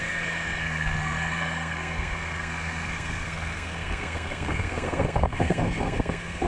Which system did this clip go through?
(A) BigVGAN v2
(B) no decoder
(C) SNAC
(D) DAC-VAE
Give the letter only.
C